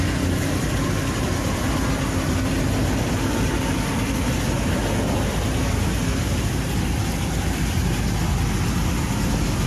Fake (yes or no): no